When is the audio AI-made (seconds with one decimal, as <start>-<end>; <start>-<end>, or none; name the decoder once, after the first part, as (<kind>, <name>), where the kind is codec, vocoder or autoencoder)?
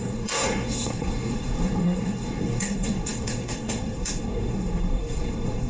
0.0-5.7 (codec, SNAC)